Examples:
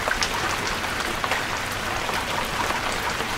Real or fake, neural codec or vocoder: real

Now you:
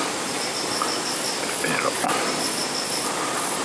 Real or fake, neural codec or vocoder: real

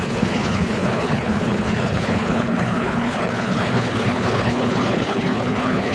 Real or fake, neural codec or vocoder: fake, codec, HILCodec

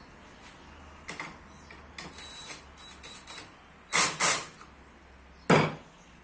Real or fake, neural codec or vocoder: real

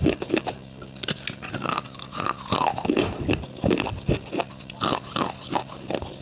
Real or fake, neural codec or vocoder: real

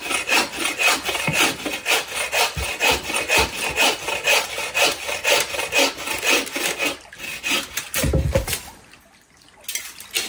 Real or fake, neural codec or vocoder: real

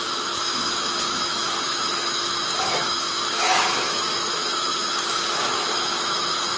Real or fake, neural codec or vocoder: fake, autoencoder, DAC-VAE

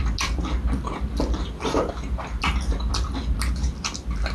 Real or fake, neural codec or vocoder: real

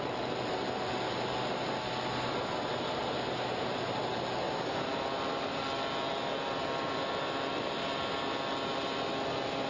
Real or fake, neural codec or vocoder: real